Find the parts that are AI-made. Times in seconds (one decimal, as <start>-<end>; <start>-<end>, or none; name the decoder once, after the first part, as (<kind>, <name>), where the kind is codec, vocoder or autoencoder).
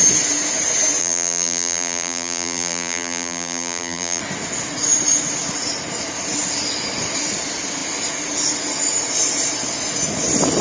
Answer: 1.0-4.2 (vocoder, BigVGAN v2)